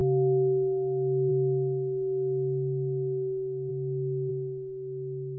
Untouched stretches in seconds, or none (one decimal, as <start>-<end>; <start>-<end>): 0.0-5.4